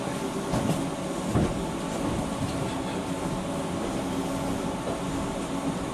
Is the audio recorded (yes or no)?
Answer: yes